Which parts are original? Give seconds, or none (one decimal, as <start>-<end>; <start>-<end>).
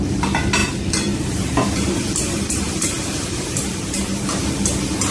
0.0-0.6; 3.7-5.1